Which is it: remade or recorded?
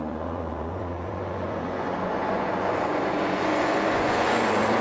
remade